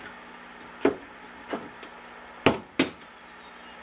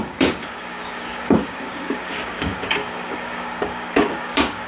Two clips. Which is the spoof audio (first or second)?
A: second